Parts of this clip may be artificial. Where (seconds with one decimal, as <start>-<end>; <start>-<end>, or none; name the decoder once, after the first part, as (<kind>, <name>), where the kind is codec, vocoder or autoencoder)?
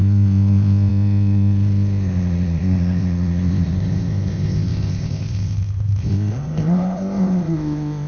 0.0-8.1 (codec, ZipCodec)